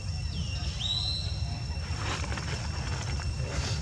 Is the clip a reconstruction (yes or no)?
no